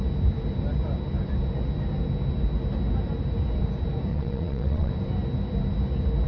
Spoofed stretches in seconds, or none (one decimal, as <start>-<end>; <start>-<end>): 4.1-4.9